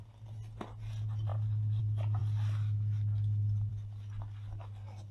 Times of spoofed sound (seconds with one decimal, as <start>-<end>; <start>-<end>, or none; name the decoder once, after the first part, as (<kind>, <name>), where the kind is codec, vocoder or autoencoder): none